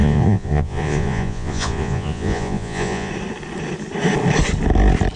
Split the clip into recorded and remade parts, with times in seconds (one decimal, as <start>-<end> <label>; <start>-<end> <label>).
0.0-3.1 remade; 3.1-5.2 recorded